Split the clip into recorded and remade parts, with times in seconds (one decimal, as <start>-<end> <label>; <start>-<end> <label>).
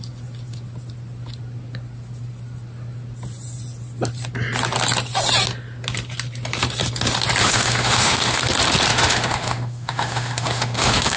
0.0-7.4 recorded; 7.4-8.4 remade; 8.4-8.9 recorded; 8.9-11.2 remade